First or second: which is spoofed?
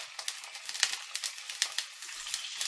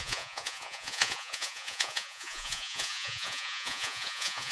second